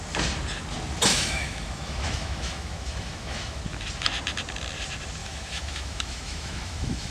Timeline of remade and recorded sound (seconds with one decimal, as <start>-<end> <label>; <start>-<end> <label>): 0.0-1.1 recorded; 1.1-3.6 remade; 3.6-5.2 recorded; 5.2-7.1 remade